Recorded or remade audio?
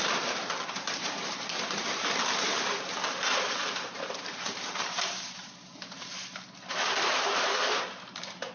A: remade